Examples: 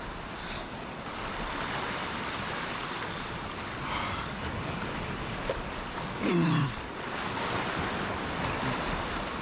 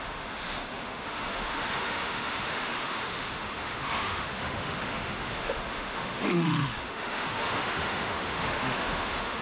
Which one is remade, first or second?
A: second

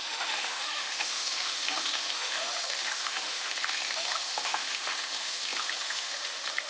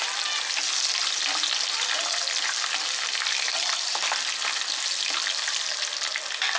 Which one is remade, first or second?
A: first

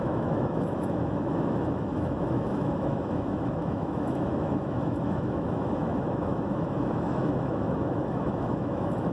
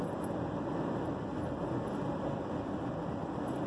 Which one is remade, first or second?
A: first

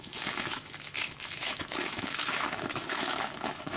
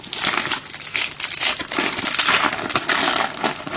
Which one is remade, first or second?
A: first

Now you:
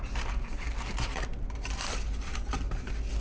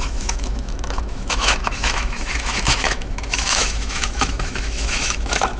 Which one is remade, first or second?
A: second